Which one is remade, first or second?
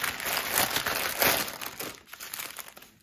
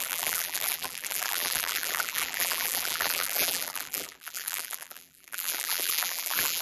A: second